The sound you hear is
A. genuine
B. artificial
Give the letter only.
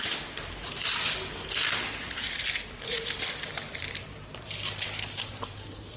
B